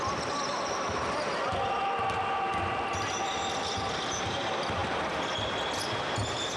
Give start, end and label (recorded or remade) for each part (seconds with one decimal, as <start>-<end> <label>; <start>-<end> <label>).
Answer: 0.0-6.6 recorded